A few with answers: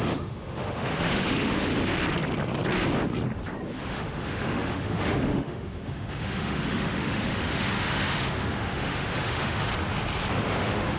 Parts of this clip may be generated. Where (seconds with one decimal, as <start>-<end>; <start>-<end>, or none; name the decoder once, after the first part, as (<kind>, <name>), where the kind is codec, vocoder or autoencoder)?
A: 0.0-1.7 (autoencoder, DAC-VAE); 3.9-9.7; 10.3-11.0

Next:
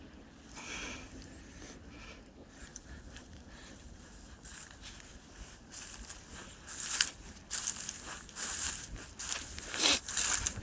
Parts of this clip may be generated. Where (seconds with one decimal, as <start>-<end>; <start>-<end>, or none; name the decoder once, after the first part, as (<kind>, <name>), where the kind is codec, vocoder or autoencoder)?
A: 2.7-4.1 (vocoder, BigVGAN v2)

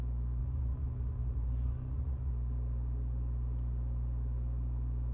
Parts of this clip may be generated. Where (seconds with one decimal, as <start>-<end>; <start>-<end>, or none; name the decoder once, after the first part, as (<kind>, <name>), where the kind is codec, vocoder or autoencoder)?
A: 0.4-2.3 (vocoder, Vocos)